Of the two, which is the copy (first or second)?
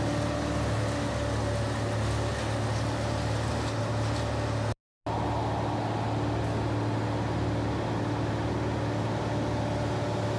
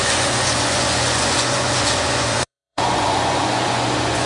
second